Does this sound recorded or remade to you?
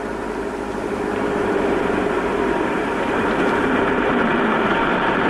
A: remade